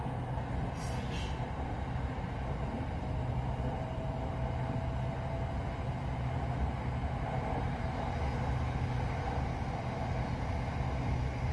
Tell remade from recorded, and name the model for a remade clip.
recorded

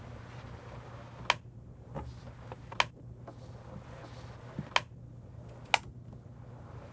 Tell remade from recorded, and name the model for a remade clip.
recorded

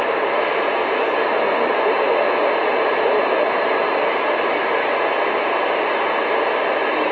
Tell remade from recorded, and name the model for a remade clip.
recorded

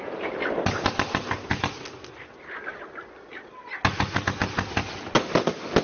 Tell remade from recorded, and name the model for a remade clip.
recorded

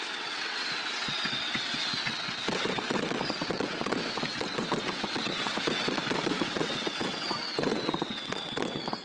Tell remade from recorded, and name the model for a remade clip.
remade, vocoder, WaveNeXt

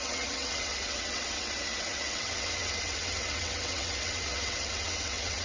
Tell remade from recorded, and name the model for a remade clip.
remade, vocoder, WaveNeXt